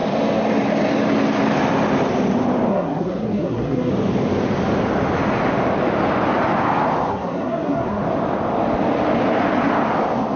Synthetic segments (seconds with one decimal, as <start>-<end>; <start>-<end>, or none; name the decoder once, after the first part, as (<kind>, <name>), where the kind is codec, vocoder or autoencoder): 2.7-3.9 (codec, SNAC); 7.1-8.0